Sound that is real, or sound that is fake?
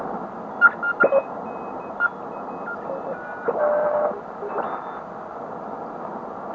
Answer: real